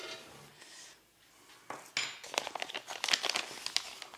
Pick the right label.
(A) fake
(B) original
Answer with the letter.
B